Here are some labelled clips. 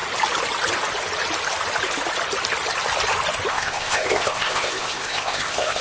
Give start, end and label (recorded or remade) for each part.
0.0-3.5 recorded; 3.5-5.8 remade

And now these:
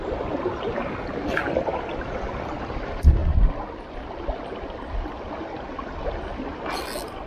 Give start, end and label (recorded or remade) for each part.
0.0-7.3 recorded

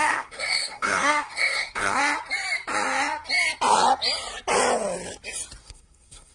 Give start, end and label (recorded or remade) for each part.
0.0-2.0 remade; 2.0-5.6 recorded; 5.6-6.3 remade